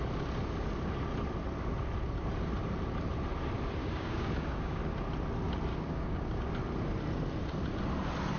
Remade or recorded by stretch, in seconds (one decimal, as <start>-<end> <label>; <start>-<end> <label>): 0.0-3.8 recorded; 3.8-4.8 remade; 4.8-5.7 recorded; 5.7-6.5 remade; 6.5-8.4 recorded